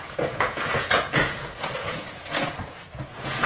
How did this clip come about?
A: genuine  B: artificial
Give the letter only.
B